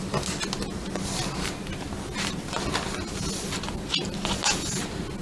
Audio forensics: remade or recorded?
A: recorded